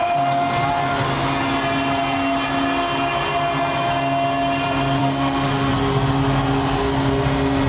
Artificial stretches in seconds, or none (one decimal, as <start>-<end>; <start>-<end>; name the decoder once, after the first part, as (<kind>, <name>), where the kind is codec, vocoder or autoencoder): 5.0-5.7 (autoencoder, DAC-VAE)